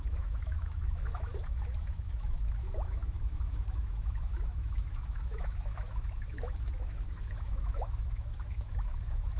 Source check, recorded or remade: remade